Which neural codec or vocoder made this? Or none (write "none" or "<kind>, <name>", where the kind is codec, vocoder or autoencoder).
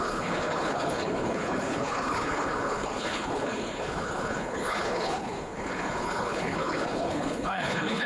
codec, HILCodec